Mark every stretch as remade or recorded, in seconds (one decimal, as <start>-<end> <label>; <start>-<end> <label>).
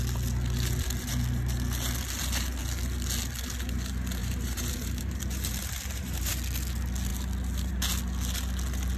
0.0-4.2 recorded; 4.2-6.3 remade; 6.3-9.0 recorded